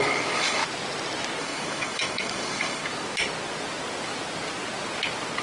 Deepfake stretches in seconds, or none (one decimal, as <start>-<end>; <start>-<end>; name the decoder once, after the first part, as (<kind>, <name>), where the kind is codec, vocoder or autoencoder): 0.0-0.6 (codec, DAC); 1.4-2.8